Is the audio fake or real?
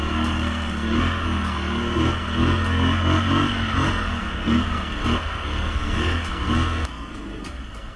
fake